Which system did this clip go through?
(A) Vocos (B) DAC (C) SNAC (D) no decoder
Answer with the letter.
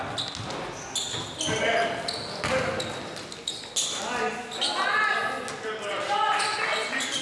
D